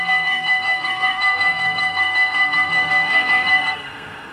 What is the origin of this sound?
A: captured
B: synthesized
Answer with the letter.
B